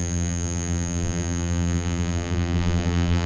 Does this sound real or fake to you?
fake